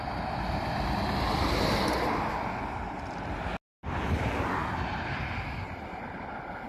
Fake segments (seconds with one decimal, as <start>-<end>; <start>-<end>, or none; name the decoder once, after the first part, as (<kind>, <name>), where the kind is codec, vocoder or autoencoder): none